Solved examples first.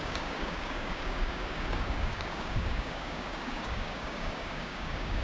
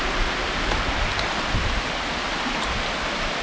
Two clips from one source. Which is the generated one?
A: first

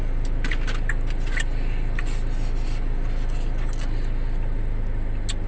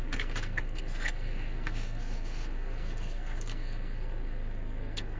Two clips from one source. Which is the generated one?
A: second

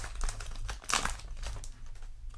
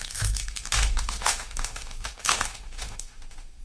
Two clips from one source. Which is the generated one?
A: second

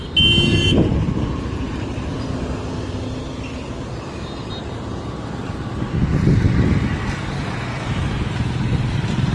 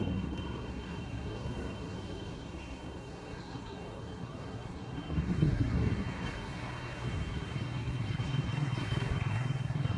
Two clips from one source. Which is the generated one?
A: second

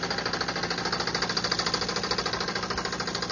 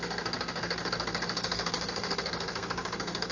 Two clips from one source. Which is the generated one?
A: second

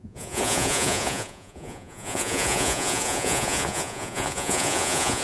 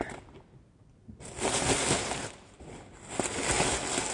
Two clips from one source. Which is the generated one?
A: first